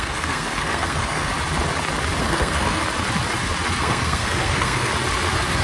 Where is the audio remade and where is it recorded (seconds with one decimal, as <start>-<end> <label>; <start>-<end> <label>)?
0.0-1.3 remade; 1.3-2.2 recorded; 2.2-2.8 remade; 2.8-3.8 recorded; 3.8-4.9 remade; 4.9-5.6 recorded